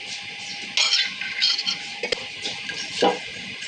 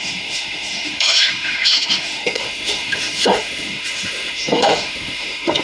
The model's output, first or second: second